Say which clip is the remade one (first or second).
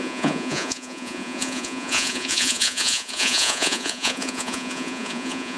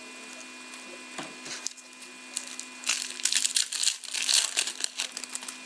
first